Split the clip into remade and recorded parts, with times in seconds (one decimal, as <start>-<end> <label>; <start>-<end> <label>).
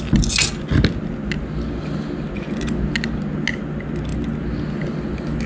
0.0-5.5 recorded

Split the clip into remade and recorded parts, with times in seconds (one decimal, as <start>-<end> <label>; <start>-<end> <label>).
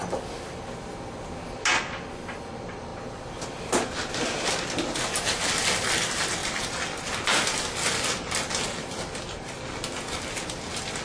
0.0-11.0 recorded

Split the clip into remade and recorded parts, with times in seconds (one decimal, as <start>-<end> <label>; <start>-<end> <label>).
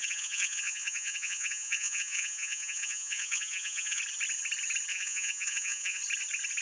0.0-4.0 remade; 4.0-4.9 recorded; 4.9-6.0 remade; 6.0-6.6 recorded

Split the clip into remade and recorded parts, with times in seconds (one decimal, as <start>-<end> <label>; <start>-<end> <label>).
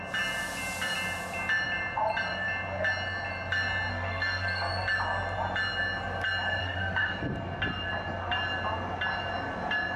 0.0-3.9 recorded; 3.9-4.7 remade; 4.7-6.6 recorded; 6.6-7.2 remade; 7.2-10.0 recorded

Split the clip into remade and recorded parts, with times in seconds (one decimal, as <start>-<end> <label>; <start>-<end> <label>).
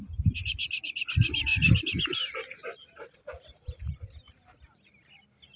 0.0-5.6 recorded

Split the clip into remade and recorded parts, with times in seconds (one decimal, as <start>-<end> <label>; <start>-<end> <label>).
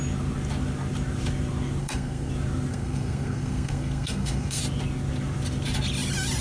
0.0-1.8 recorded; 1.8-2.3 remade; 2.3-2.7 recorded; 2.7-4.6 remade; 4.6-6.4 recorded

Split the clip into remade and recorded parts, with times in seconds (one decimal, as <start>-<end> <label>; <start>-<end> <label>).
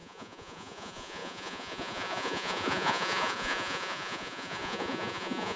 0.0-5.6 remade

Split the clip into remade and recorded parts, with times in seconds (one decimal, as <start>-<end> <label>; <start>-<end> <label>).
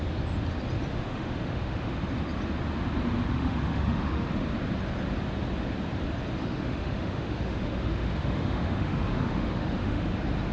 0.0-0.9 recorded; 0.9-1.9 remade; 1.9-3.3 recorded; 3.3-4.3 remade; 4.3-6.4 recorded; 6.4-10.1 remade; 10.1-10.5 recorded